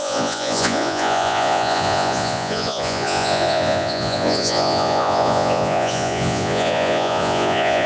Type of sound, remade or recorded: remade